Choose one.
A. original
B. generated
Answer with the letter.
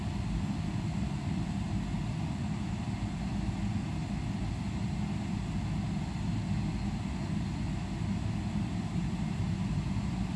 A